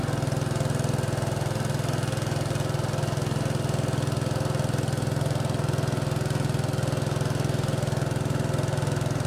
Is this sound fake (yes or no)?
no